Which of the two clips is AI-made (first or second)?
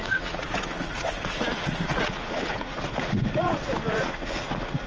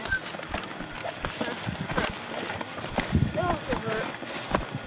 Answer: first